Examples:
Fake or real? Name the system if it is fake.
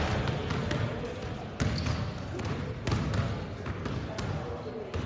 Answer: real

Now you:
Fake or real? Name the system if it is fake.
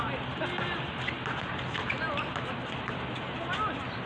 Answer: real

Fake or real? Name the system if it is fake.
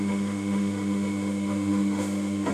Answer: fake, autoencoder, DAC-VAE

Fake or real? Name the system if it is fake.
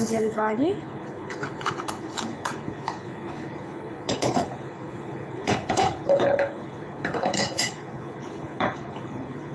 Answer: fake, codec, HILCodec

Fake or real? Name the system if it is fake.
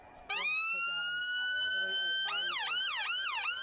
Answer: real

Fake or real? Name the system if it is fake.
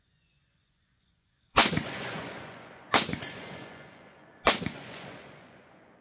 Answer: fake, vocoder, Vocos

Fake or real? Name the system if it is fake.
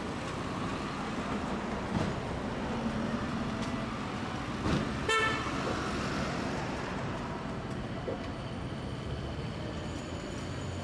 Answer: real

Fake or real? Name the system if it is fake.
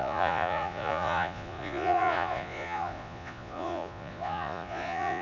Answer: fake, vocoder, Vocos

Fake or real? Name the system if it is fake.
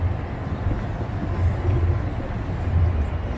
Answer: real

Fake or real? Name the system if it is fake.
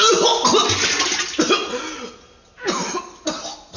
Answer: real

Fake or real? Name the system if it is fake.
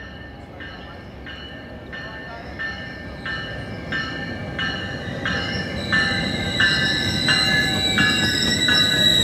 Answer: real